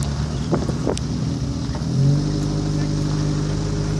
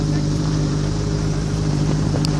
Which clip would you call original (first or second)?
first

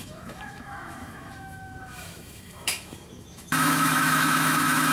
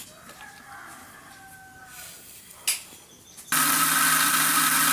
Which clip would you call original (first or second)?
second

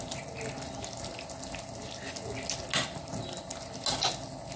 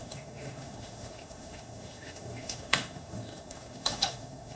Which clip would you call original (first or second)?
first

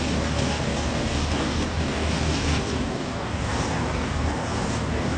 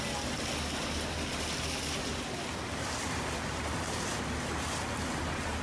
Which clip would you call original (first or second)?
second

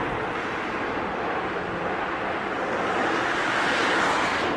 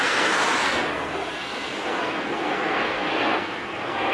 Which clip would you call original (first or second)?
first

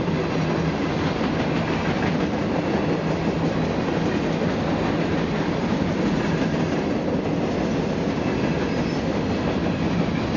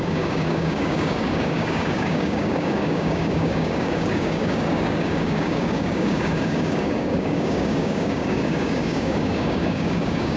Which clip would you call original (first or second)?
first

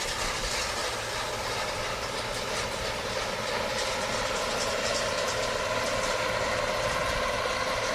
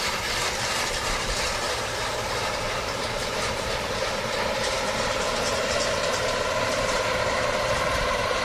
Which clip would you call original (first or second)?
first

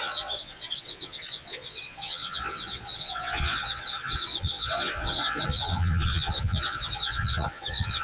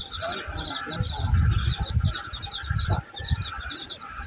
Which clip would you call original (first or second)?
second